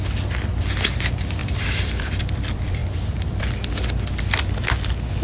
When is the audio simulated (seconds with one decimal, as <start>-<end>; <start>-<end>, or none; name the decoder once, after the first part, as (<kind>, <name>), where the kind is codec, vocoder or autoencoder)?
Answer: 1.4-2.4 (vocoder, BigVGAN v2); 2.8-3.4